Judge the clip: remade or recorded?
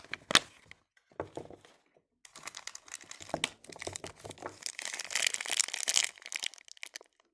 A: recorded